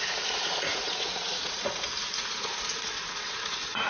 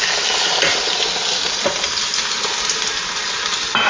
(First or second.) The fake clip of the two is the first